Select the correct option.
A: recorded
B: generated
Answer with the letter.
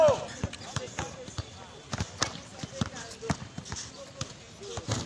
A